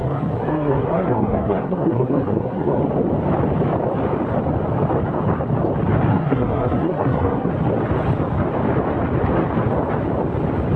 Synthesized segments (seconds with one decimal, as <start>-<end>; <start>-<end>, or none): 0.0-2.8; 6.1-7.5